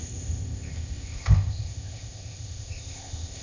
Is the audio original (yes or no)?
no